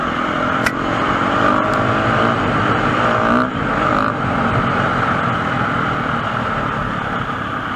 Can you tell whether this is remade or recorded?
recorded